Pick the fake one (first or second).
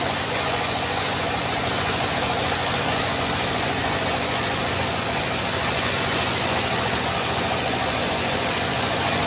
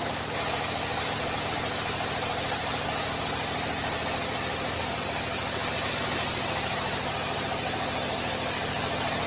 first